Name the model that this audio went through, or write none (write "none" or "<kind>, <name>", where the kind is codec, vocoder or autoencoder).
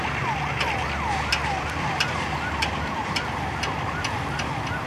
none